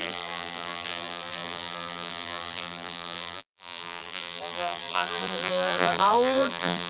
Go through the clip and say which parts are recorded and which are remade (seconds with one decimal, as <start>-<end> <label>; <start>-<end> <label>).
0.0-6.9 remade